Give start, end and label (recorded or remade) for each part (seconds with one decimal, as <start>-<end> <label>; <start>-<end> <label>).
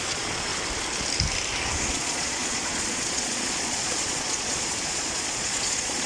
0.0-0.5 remade; 0.5-1.9 recorded; 1.9-6.1 remade